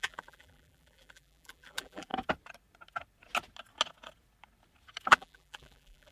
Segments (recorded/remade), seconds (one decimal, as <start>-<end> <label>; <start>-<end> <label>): 0.0-2.1 remade; 2.1-5.1 recorded; 5.1-6.1 remade